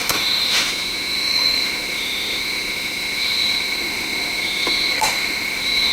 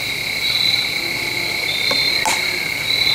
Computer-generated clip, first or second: first